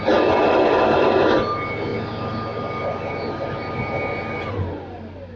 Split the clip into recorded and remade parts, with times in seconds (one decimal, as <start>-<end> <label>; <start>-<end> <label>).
0.0-5.4 recorded